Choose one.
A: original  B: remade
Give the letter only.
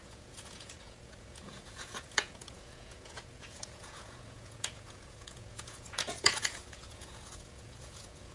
B